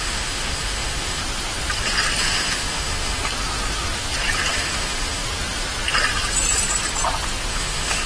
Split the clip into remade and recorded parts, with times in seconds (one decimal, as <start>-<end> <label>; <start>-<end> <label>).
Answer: 0.0-1.2 remade; 1.2-2.2 recorded; 2.2-3.2 remade; 3.2-4.5 recorded; 4.5-5.2 remade; 5.2-7.5 recorded; 7.5-8.1 remade